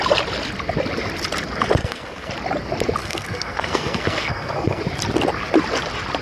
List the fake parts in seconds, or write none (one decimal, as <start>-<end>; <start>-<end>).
1.8-2.3; 3.0-4.8